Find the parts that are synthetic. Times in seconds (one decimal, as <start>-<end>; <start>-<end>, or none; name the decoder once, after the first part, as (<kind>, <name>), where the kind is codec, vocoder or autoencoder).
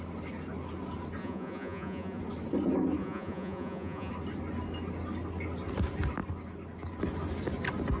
1.2-2.2 (vocoder, Vocos); 3.0-4.1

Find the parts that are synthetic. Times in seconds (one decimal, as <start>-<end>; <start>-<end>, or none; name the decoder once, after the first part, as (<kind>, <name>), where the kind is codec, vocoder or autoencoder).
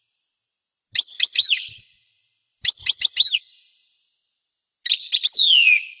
none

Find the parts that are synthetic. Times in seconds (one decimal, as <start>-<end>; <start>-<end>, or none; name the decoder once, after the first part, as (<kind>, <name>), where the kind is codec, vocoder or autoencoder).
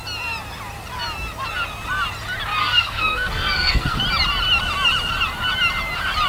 2.6-4.0 (codec, SNAC)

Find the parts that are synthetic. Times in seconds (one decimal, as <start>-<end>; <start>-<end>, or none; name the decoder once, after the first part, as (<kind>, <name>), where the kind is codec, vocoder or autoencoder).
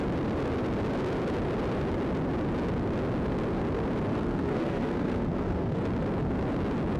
4.1-5.8 (codec, SNAC)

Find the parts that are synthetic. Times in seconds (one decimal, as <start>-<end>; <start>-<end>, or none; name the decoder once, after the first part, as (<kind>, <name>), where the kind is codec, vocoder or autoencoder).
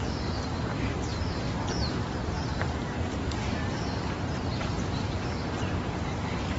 1.1-5.1 (vocoder, BigVGAN v2)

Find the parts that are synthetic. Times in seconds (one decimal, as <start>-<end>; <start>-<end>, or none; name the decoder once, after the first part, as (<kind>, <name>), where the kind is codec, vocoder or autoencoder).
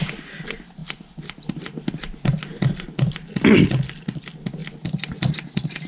none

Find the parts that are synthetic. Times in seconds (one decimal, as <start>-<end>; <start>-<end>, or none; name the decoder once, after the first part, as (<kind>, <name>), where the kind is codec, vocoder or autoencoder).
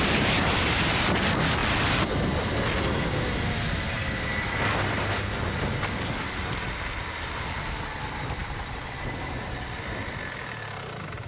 none